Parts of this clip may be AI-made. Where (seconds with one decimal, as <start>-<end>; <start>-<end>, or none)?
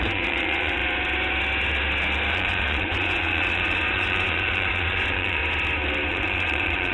0.0-0.8; 2.3-5.4; 6.1-6.9